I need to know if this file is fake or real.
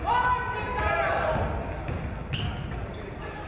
real